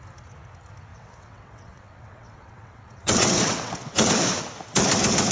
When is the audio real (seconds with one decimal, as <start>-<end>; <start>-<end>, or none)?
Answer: 0.0-0.9; 4.1-5.3